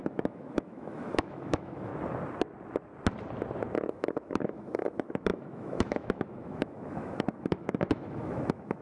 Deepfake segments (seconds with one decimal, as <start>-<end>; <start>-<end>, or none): 0.0-1.9; 3.9-8.8